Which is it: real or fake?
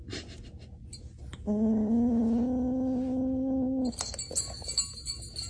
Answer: real